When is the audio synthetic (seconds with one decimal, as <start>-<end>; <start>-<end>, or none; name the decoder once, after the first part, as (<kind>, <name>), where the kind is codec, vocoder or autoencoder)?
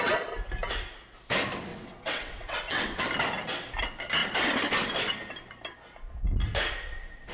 1.7-3.0 (vocoder, WaveNeXt)